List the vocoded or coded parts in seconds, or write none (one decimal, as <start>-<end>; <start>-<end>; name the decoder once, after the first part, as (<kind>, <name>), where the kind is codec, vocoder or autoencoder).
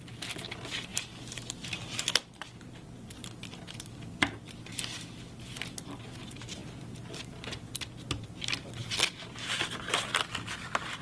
none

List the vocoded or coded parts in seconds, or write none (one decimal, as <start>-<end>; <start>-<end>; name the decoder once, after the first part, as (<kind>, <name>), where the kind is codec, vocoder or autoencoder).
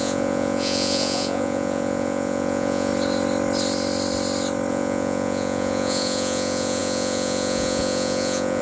0.0-2.9 (vocoder, Vocos); 4.7-8.6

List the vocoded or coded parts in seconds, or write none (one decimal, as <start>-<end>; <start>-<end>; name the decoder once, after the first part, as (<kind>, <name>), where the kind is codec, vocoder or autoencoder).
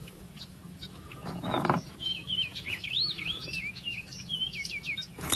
0.0-5.4 (autoencoder, DAC-VAE)